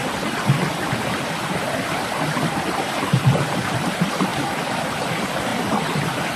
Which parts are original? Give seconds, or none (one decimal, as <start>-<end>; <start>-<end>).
0.0-6.4